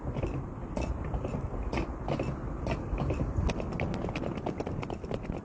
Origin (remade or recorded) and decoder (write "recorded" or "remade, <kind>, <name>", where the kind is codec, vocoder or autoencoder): recorded